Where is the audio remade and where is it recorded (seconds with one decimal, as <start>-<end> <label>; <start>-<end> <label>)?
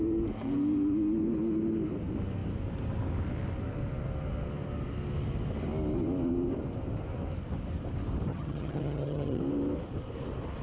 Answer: 0.0-8.3 recorded; 8.3-9.4 remade; 9.4-10.6 recorded